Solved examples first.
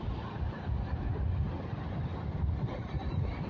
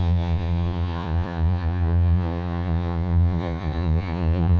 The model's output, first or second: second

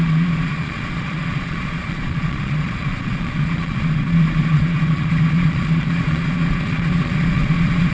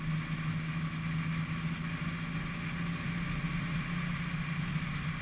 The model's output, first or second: first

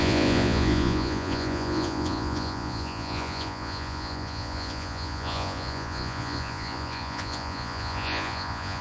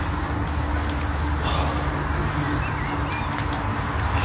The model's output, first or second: first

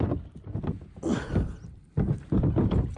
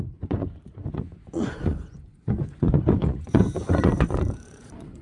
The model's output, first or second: second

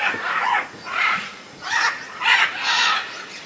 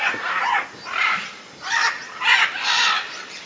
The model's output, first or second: first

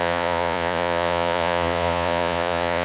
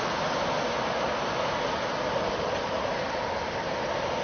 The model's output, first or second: first